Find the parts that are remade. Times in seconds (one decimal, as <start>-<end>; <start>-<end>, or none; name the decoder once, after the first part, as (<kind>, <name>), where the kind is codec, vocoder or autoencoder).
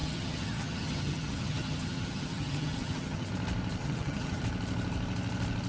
0.0-3.3 (vocoder, HiFi-GAN); 3.8-4.4